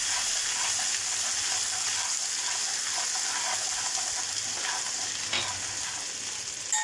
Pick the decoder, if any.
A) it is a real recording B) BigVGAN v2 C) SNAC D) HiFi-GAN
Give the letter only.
A